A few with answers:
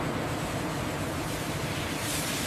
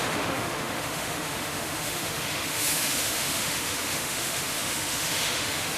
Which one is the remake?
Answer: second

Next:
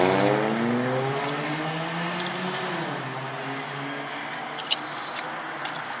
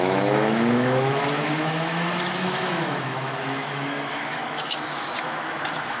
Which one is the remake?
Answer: second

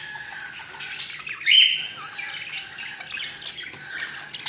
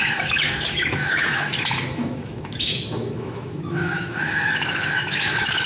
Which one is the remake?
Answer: second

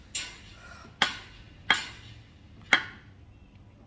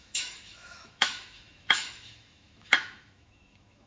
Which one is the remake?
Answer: second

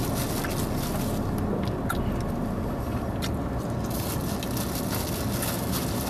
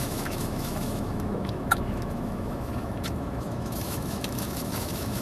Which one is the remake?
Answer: second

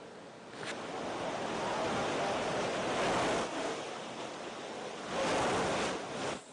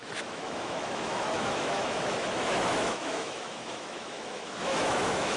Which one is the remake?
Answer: second